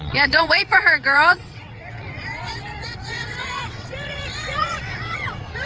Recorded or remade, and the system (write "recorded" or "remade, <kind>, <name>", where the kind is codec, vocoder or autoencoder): remade, vocoder, WaveNeXt